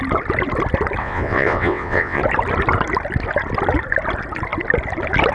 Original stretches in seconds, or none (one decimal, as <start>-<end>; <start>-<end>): 0.0-1.0; 2.2-5.3